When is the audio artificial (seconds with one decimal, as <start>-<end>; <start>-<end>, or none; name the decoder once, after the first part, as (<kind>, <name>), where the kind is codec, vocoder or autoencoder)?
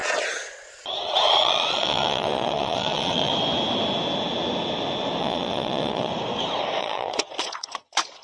0.0-3.3 (vocoder, Vocos); 5.2-6.1; 6.8-8.2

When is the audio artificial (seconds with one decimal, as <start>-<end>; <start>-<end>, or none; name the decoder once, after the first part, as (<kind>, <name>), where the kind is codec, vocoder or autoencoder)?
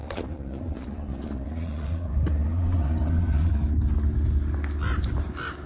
0.0-2.1 (vocoder, Vocos); 2.5-3.5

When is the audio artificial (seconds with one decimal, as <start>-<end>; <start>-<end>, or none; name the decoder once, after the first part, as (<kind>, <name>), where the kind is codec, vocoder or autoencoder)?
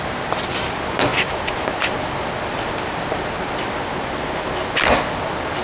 none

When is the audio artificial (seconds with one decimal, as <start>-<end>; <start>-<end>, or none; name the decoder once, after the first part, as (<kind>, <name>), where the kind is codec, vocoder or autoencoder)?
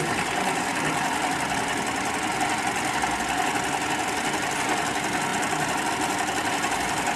none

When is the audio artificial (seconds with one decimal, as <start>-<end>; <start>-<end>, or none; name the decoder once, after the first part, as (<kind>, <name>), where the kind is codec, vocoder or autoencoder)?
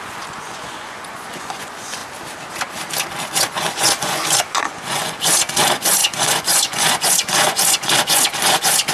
0.0-2.0 (vocoder, Vocos); 3.3-8.9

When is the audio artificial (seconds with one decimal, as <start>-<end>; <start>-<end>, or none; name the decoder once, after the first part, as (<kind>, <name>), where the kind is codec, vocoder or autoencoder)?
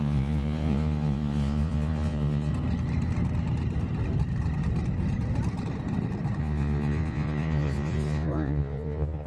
0.0-2.5 (vocoder, Vocos); 6.4-9.3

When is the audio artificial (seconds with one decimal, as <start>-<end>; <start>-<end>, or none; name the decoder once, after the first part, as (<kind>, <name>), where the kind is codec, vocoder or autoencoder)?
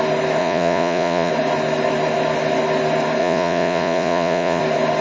0.4-1.3 (vocoder, Vocos); 3.2-4.6